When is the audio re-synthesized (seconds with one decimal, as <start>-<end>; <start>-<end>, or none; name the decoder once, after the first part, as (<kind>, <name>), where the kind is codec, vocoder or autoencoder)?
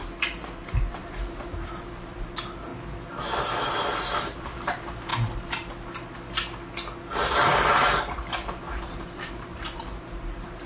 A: 0.7-2.7 (vocoder, BigVGAN v2); 3.4-5.1; 7.3-10.7